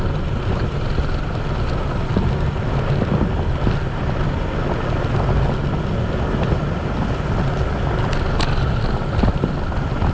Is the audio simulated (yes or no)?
no